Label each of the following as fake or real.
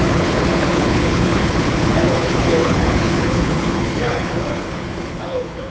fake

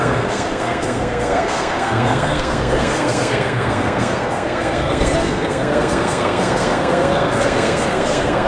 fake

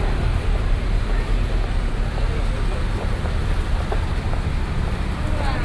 real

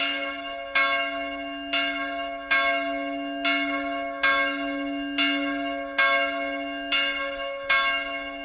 real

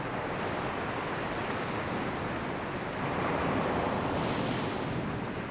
real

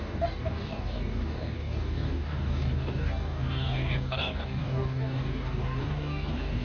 fake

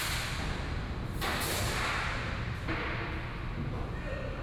real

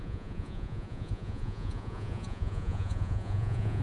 fake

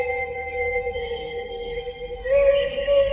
fake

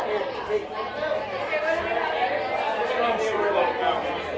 real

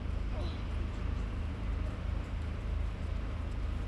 real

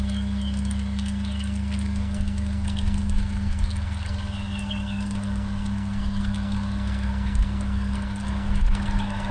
fake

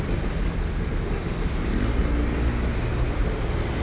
real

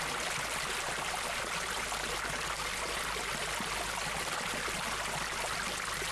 real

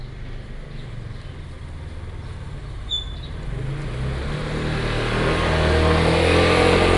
real